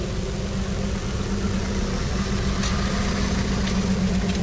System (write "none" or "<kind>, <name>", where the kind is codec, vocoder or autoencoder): none